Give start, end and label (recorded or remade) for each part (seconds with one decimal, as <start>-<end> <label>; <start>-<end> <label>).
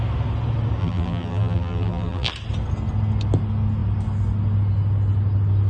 0.0-0.8 recorded; 0.8-2.3 remade; 2.3-5.7 recorded